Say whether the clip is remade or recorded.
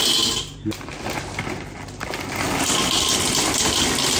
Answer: recorded